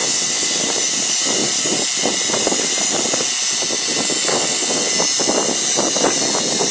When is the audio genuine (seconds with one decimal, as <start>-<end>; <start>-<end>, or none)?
0.6-4.3; 4.9-6.7